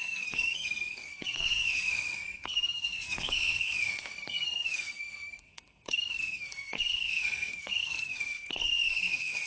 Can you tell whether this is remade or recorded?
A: remade